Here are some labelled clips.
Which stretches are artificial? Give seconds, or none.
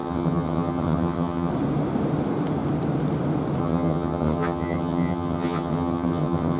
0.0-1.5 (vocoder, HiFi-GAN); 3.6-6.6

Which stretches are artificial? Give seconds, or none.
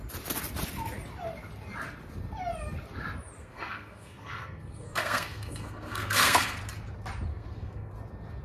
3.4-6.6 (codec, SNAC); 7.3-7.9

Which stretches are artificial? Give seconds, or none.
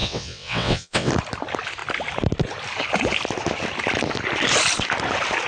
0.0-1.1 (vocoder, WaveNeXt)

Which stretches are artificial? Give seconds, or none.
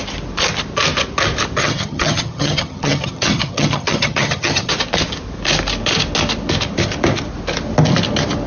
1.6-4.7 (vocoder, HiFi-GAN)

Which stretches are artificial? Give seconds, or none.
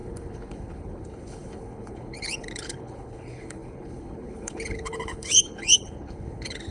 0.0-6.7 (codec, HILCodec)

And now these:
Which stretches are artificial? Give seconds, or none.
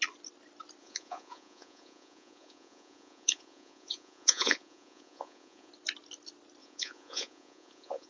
0.8-5.7 (vocoder, Vocos); 6.6-8.1